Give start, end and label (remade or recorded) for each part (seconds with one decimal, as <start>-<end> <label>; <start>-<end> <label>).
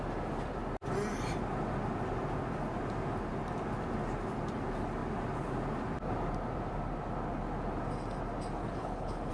0.0-8.6 recorded; 8.6-9.3 remade